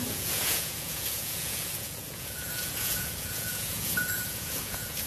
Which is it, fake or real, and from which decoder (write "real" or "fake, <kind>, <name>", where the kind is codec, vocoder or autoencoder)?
fake, vocoder, Vocos